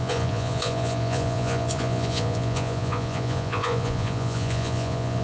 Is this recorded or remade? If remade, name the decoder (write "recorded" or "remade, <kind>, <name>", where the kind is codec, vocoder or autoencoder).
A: remade, vocoder, Vocos